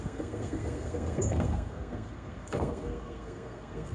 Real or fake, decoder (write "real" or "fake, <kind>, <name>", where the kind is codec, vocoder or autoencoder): fake, codec, SNAC